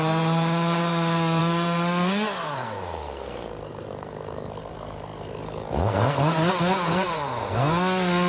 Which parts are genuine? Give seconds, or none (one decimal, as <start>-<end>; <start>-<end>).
none